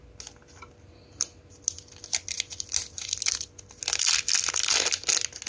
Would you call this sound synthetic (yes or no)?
no